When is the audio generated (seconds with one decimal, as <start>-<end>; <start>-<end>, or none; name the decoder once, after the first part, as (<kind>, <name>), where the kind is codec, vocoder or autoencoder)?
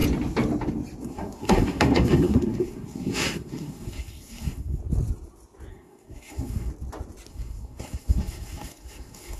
1.0-4.8 (codec, SNAC); 5.7-6.7; 7.3-9.4